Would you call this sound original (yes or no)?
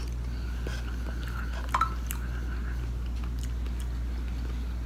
yes